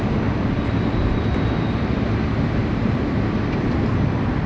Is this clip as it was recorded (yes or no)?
yes